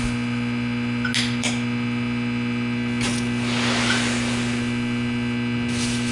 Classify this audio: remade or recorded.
recorded